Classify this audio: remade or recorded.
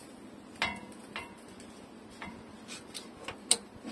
recorded